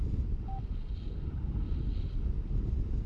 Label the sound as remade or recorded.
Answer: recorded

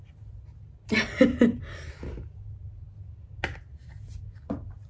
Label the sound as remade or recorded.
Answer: recorded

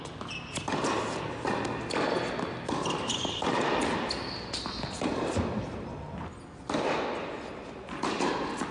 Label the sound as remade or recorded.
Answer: recorded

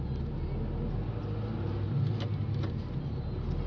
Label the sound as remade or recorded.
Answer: recorded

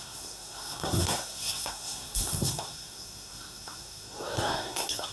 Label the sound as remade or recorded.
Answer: remade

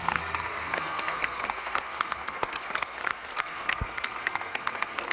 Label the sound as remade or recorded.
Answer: remade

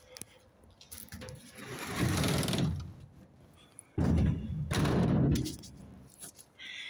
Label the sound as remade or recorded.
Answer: recorded